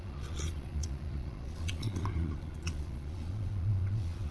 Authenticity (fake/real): fake